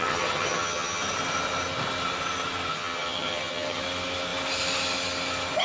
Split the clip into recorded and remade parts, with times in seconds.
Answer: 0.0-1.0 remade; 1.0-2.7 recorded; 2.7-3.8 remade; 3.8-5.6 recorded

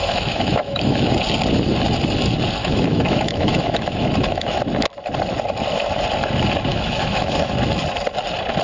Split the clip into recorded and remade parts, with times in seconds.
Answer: 0.0-1.1 remade; 1.1-2.6 recorded; 2.6-4.6 remade; 4.6-6.7 recorded; 6.7-7.5 remade; 7.5-8.6 recorded

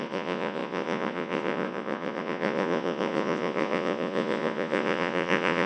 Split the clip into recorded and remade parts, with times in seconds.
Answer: 0.0-5.7 remade

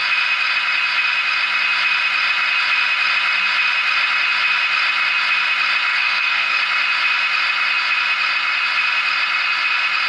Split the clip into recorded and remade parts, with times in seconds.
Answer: 0.0-5.9 recorded; 5.9-6.6 remade; 6.6-10.1 recorded

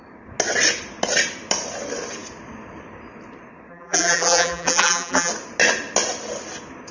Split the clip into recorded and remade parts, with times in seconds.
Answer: 0.0-3.7 recorded; 3.7-5.3 remade; 5.3-6.9 recorded

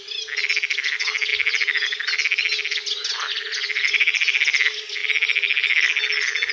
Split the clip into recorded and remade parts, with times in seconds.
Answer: 0.0-6.5 recorded

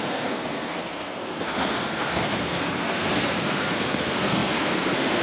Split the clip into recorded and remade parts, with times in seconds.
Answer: 0.0-5.2 remade